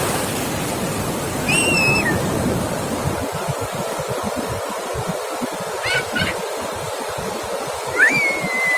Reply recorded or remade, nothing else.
recorded